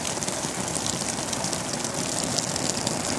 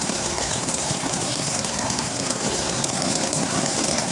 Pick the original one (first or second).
first